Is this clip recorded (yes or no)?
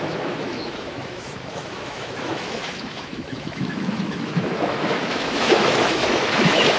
no